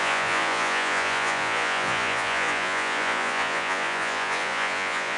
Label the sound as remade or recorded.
remade